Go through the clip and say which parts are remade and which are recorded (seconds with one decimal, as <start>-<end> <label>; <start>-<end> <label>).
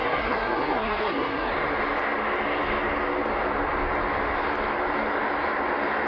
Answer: 0.0-1.5 remade; 1.5-6.1 recorded